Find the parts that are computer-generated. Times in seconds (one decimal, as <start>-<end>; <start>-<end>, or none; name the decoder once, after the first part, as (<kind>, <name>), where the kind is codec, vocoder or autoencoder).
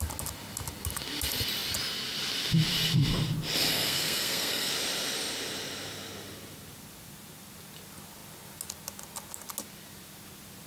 3.7-4.7 (codec, SNAC)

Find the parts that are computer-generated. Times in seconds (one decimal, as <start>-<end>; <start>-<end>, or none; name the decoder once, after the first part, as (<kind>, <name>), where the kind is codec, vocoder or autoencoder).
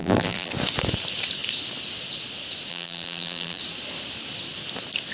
0.0-0.5 (vocoder, BigVGAN v2); 2.7-3.6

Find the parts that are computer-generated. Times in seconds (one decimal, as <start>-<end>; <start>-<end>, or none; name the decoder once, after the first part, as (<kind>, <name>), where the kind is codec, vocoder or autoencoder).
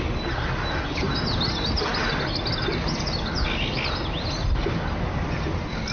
none